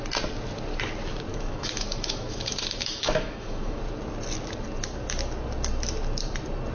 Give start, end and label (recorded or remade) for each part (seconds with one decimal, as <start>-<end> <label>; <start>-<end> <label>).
0.0-1.3 recorded; 1.3-3.8 remade; 3.8-6.7 recorded